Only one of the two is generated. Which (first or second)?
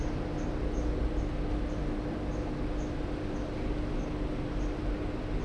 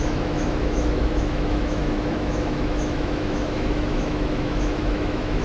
second